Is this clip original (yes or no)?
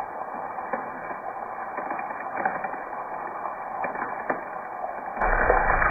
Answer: yes